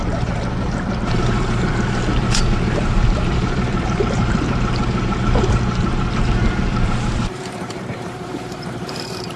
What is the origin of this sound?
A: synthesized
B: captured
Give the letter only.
A